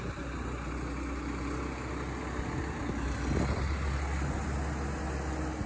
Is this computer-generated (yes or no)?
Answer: no